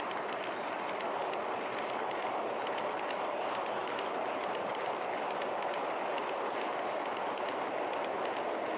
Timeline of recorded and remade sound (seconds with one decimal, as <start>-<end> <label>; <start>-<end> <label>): 0.0-8.8 recorded